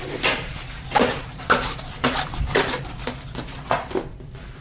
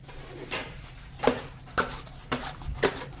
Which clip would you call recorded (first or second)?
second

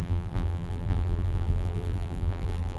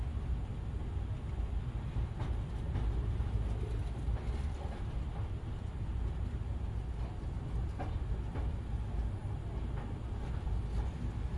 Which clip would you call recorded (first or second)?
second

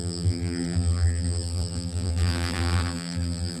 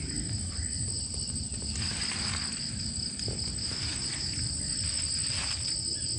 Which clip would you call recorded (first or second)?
second